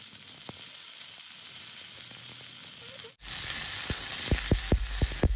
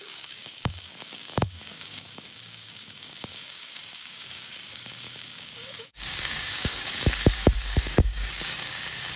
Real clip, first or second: first